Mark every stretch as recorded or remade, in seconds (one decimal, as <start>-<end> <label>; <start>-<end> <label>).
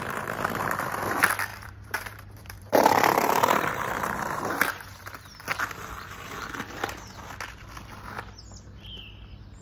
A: 0.0-1.5 recorded; 1.5-3.9 remade; 3.9-9.6 recorded